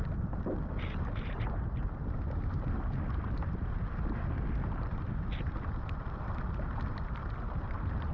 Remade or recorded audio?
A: recorded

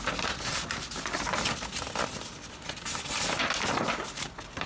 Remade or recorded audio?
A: recorded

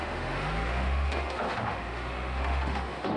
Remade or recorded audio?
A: remade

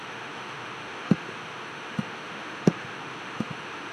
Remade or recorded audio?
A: remade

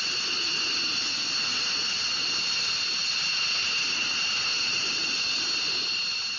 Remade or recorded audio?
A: recorded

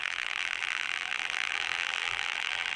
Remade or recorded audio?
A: remade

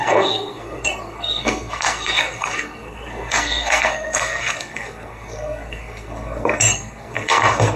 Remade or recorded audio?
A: remade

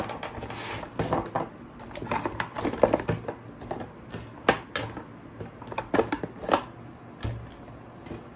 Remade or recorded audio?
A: recorded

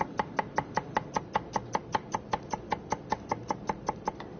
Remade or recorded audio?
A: recorded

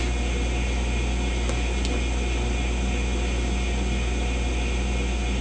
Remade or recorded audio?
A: recorded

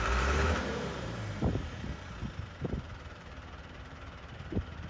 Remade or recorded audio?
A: remade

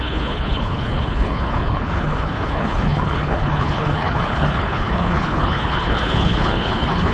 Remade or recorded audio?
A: remade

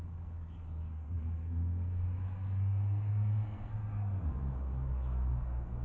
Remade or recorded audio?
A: remade